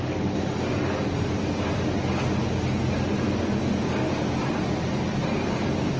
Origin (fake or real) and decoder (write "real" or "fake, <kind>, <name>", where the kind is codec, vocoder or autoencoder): real